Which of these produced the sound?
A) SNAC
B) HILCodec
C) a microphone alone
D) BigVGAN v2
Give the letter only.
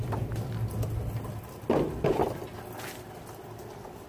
C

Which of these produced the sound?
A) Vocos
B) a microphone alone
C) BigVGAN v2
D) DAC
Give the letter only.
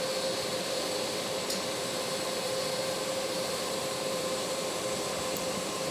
C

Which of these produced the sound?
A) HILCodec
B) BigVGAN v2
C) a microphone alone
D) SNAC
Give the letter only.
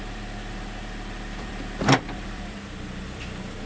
B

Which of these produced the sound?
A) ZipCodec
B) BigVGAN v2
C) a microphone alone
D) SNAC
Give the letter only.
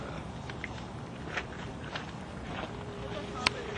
B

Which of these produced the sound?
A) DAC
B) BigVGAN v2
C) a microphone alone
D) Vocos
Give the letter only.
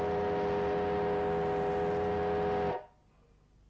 C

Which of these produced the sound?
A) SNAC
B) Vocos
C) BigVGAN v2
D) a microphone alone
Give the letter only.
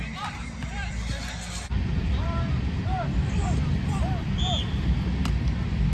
C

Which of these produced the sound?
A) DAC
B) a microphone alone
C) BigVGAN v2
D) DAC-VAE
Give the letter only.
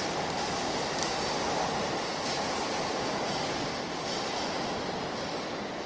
C